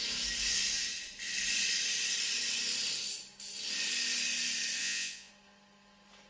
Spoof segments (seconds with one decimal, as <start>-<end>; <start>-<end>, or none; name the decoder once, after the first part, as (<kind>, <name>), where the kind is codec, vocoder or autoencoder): 4.8-5.3 (vocoder, Vocos)